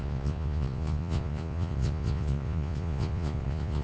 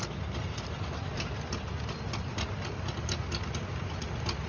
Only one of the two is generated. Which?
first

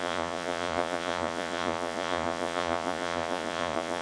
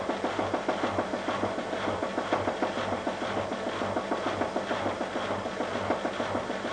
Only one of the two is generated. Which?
first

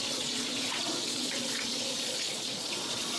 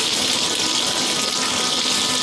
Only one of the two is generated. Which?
first